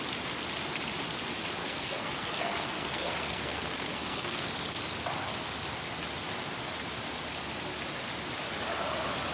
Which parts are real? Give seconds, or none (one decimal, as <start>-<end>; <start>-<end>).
0.0-1.6; 4.5-9.3